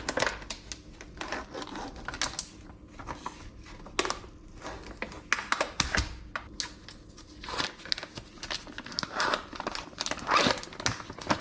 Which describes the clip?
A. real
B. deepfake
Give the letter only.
A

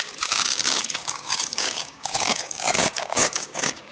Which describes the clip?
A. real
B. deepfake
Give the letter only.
B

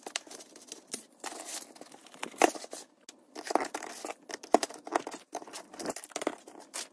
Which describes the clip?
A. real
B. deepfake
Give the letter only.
A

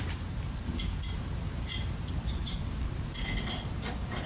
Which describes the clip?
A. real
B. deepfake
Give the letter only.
A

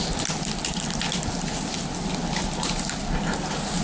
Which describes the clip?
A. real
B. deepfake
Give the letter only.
A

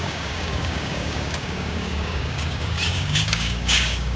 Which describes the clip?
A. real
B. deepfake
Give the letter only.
B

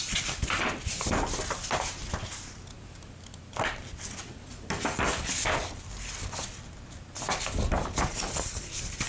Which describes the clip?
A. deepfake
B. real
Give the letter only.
B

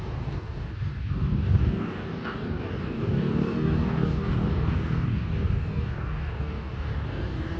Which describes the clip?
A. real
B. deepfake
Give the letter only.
B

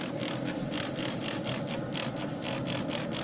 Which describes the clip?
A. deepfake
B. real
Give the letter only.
B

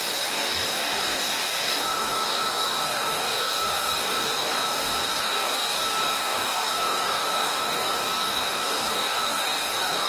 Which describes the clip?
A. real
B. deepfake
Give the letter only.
B